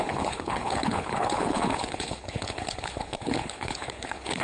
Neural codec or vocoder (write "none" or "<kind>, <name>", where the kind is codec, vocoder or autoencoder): codec, HILCodec